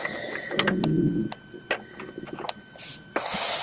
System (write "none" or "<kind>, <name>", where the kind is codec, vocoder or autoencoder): none